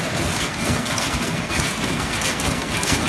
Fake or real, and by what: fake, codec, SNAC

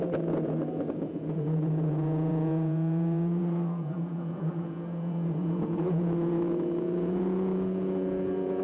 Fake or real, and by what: fake, vocoder, Vocos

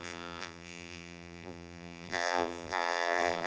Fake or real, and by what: fake, vocoder, BigVGAN v2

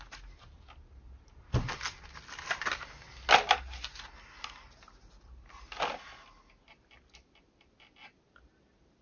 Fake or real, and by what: real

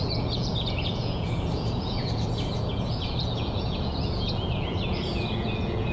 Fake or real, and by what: fake, vocoder, Vocos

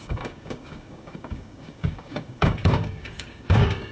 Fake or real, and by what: fake, codec, DAC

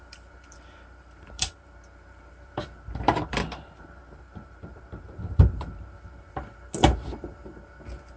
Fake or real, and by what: fake, vocoder, BigVGAN v2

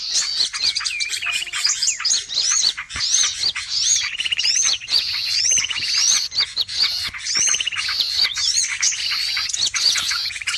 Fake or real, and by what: fake, vocoder, Vocos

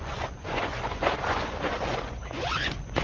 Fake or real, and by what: fake, vocoder, Vocos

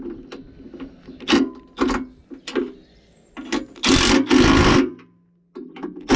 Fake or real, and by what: real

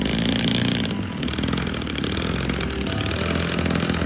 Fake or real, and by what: real